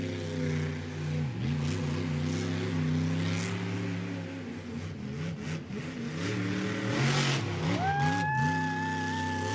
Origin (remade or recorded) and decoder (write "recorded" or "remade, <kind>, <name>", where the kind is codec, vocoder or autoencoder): recorded